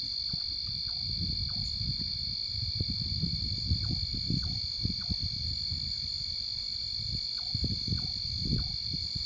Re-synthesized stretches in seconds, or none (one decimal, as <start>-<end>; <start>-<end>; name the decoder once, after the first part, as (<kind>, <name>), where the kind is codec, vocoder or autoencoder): none